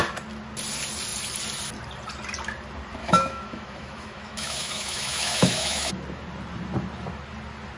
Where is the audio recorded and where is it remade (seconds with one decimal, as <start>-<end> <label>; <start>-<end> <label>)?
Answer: 0.0-3.0 recorded; 3.0-5.9 remade; 5.9-7.8 recorded